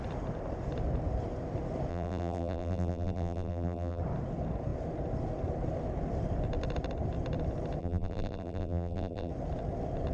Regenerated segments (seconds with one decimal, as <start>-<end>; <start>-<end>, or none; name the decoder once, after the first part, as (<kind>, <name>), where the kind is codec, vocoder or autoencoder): 1.9-4.0 (vocoder, BigVGAN v2); 7.8-9.3